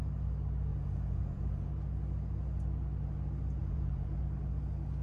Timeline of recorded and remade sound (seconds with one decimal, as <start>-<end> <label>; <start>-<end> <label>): 0.0-0.7 recorded; 0.7-1.7 remade; 1.7-3.6 recorded; 3.6-4.2 remade; 4.2-5.0 recorded